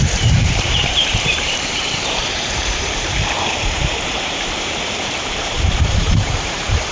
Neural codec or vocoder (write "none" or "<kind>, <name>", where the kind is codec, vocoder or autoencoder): vocoder, BigVGAN v2